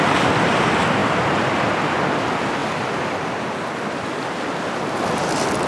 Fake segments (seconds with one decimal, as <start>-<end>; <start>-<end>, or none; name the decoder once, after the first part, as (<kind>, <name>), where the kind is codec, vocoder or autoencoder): none